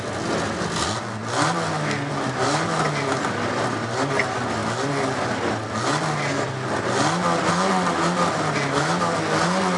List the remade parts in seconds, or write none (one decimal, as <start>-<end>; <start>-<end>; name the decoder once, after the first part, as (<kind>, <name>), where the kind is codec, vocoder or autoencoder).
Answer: none